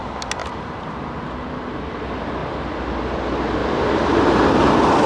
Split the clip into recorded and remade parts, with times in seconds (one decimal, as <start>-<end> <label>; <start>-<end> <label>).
0.0-0.4 recorded; 0.4-2.0 remade; 2.0-3.6 recorded; 3.6-5.1 remade